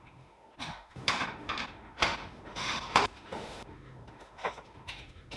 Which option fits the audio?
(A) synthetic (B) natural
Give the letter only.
A